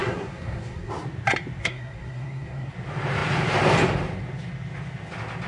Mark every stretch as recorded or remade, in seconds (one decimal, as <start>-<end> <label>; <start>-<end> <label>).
0.0-0.9 remade; 0.9-1.6 recorded; 1.6-2.7 remade; 2.7-5.5 recorded